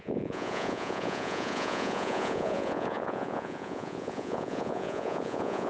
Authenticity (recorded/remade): remade